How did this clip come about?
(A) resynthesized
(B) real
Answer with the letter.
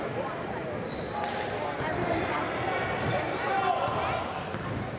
B